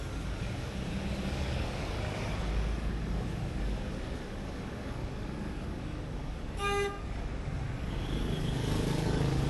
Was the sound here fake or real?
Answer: fake